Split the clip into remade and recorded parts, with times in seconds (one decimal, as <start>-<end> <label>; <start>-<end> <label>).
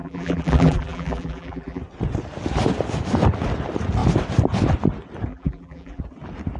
0.0-1.8 remade; 1.8-5.3 recorded; 5.3-6.0 remade; 6.0-6.6 recorded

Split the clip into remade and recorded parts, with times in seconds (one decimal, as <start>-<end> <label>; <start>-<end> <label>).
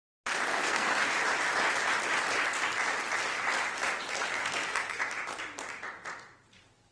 0.0-0.5 recorded; 0.5-1.1 remade; 1.1-4.4 recorded; 4.4-5.0 remade; 5.0-6.9 recorded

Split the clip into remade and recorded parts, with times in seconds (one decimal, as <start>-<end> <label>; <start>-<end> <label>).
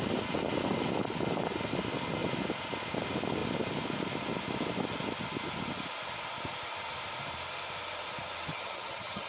0.0-8.5 recorded; 8.5-9.3 remade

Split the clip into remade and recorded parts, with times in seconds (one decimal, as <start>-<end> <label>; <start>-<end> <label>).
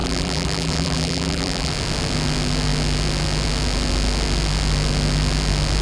0.0-1.7 remade; 1.7-5.8 recorded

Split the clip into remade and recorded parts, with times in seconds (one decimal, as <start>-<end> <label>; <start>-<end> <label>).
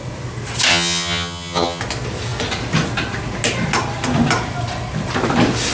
0.0-0.7 recorded; 0.7-1.8 remade; 1.8-5.7 recorded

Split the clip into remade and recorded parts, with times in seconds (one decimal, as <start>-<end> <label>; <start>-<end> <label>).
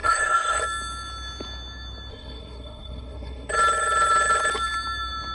0.0-0.6 remade; 0.6-2.1 recorded; 2.1-3.5 remade; 3.5-5.3 recorded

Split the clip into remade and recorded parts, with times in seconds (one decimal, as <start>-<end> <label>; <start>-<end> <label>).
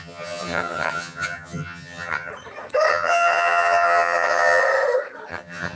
0.0-2.3 remade; 2.3-2.9 recorded; 2.9-4.6 remade; 4.6-5.3 recorded; 5.3-5.8 remade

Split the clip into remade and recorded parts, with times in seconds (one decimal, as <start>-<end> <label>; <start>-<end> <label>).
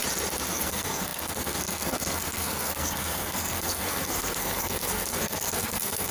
0.0-0.5 recorded; 0.5-6.1 remade